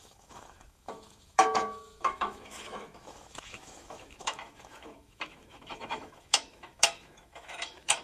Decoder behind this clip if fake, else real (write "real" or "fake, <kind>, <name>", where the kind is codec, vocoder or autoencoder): fake, autoencoder, DAC-VAE